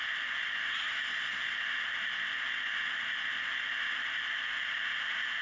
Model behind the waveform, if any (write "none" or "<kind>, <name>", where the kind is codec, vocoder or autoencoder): none